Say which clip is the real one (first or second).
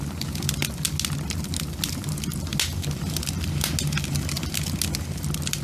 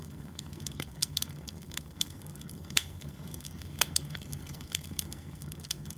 first